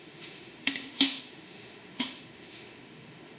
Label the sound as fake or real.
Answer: fake